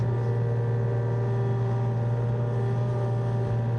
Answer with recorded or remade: recorded